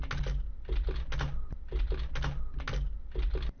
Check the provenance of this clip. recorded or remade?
recorded